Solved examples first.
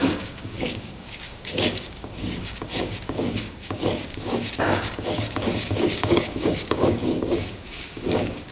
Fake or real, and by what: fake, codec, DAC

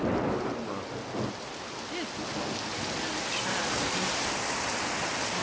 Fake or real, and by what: real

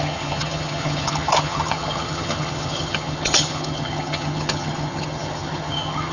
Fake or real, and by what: fake, vocoder, HiFi-GAN